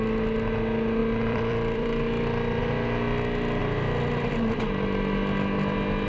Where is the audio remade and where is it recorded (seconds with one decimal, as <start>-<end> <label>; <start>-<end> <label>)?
0.0-1.0 recorded; 1.0-2.6 remade; 2.6-6.1 recorded